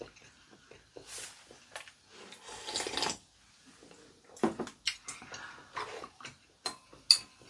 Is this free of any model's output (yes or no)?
yes